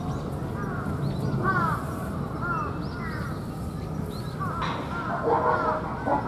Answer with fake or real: real